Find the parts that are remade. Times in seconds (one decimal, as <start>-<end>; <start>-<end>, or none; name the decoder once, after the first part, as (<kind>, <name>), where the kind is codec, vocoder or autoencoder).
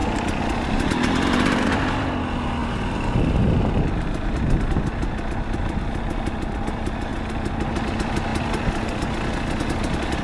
none